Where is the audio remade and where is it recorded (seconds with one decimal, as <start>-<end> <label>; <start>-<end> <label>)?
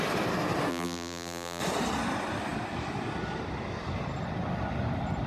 0.0-0.7 recorded; 0.7-1.6 remade; 1.6-5.3 recorded